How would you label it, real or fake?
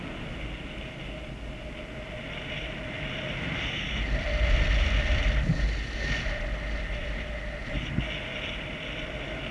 real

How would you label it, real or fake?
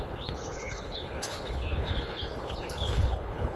fake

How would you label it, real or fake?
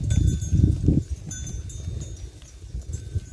real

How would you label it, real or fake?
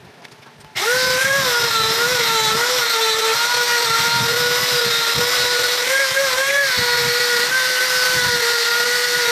real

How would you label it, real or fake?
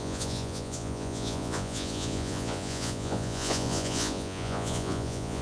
fake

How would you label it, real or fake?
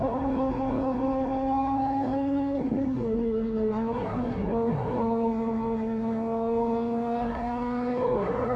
fake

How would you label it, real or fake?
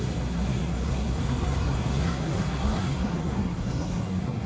fake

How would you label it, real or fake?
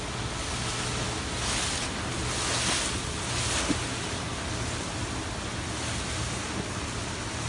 real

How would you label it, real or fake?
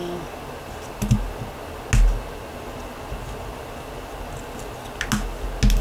real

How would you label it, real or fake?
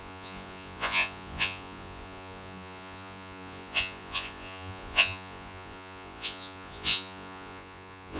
fake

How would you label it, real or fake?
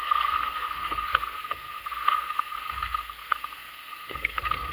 fake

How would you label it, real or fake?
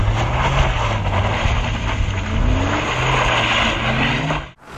real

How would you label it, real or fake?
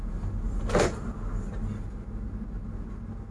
real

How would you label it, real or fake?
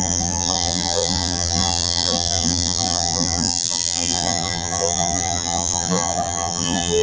fake